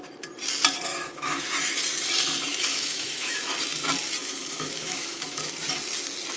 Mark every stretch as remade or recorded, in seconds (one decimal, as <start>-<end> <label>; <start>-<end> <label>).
0.0-0.9 recorded; 0.9-1.5 remade; 1.5-2.5 recorded; 2.5-3.5 remade; 3.5-4.2 recorded; 4.2-5.5 remade; 5.5-6.4 recorded